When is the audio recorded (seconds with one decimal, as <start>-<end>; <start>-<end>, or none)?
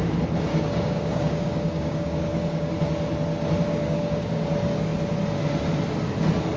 0.0-0.5; 2.7-3.7; 4.5-6.6